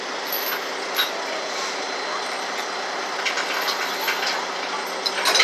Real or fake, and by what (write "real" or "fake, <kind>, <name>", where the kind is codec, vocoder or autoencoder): real